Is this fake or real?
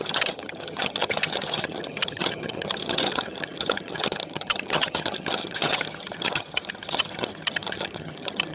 fake